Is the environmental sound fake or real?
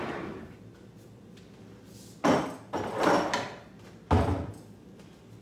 real